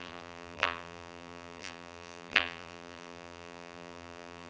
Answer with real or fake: fake